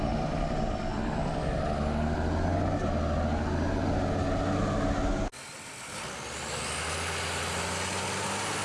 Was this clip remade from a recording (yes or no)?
no